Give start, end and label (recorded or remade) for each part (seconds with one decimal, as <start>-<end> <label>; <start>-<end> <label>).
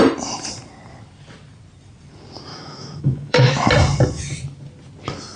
0.0-2.5 recorded; 2.5-3.7 remade; 3.7-5.4 recorded